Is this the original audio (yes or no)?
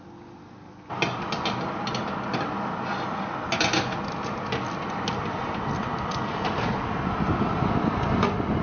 yes